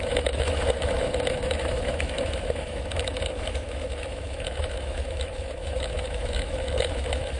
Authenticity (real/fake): fake